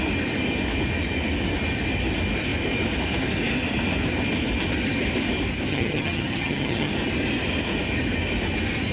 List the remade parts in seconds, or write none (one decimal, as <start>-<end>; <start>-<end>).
5.7-6.9